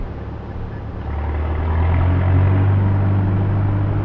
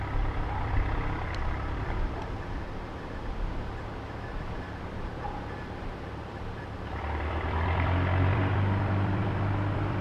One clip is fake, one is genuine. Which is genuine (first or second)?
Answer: first